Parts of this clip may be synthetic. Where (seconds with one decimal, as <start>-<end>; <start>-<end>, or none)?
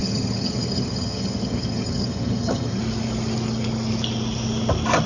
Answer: 0.0-2.8